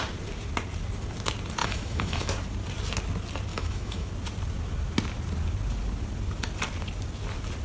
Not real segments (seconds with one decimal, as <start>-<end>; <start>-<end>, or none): 1.6-2.3; 3.5-4.1